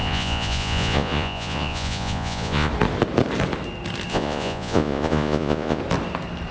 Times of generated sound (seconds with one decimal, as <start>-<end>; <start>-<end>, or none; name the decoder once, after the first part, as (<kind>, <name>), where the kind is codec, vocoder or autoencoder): 0.0-2.7 (vocoder, Vocos); 4.1-5.8